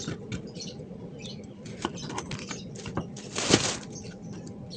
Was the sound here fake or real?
real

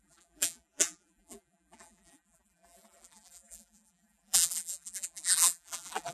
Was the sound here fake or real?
fake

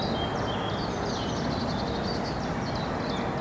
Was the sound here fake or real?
real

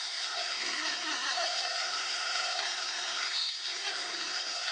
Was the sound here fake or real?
fake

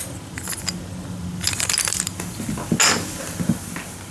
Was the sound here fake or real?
real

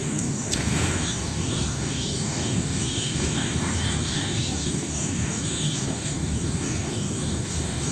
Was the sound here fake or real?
fake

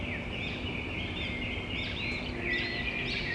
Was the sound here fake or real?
real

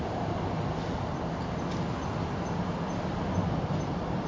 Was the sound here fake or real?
real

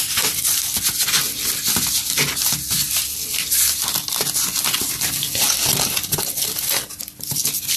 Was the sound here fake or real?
real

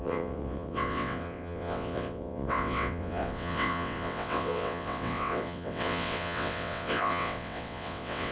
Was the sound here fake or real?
fake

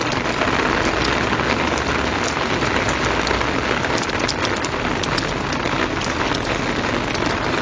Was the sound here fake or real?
real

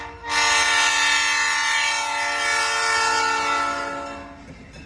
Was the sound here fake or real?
real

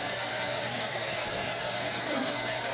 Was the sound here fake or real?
fake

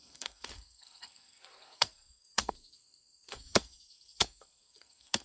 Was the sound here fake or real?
fake